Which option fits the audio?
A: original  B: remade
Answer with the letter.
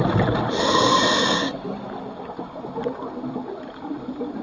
B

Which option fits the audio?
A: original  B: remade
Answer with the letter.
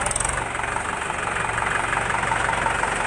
A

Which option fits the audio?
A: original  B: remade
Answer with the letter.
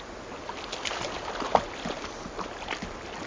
A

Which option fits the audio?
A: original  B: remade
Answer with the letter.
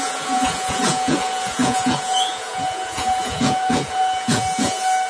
B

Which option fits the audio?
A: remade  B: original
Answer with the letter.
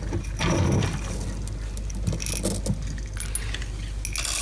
B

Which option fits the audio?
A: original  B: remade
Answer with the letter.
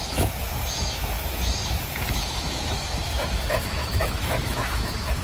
B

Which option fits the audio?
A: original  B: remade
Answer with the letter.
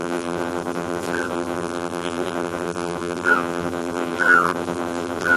B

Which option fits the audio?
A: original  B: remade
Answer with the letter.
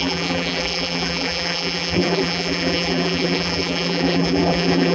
B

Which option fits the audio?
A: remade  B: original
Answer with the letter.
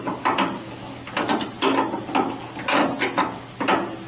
B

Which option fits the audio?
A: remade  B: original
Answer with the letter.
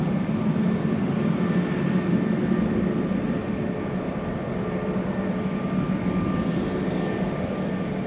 B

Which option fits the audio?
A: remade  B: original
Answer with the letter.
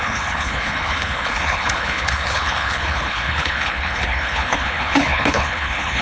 A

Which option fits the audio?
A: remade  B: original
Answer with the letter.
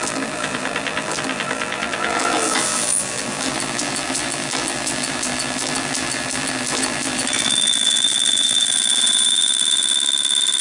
A